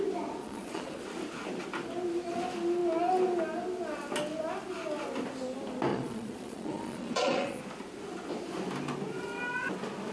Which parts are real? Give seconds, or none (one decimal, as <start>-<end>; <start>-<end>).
0.0-0.4; 1.0-5.9; 7.6-10.1